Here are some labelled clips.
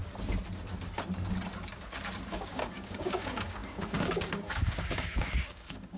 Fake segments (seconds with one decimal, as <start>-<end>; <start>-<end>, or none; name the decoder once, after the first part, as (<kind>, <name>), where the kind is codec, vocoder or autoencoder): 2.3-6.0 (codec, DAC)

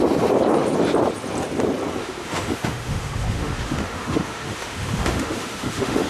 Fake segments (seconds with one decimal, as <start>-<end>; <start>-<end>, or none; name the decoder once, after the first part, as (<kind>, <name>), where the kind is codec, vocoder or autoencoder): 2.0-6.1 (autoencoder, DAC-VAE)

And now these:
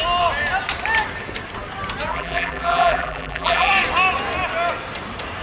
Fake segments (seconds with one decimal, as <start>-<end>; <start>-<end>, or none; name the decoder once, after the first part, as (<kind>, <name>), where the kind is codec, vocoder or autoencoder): 2.1-3.7 (vocoder, BigVGAN v2)

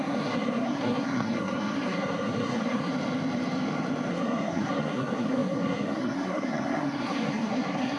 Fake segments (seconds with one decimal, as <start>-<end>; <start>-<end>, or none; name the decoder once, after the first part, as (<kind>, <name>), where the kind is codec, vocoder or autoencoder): 0.0-2.9 (codec, SNAC); 4.1-8.0

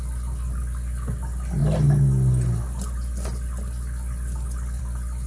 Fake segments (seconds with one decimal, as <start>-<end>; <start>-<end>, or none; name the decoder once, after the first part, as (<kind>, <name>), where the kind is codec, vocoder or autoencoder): none